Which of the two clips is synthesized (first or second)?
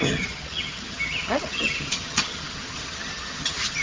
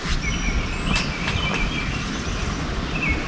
first